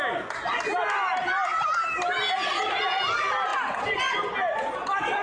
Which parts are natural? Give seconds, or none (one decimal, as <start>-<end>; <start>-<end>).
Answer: 0.0-1.5; 3.0-5.2